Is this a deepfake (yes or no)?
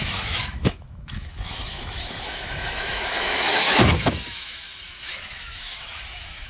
yes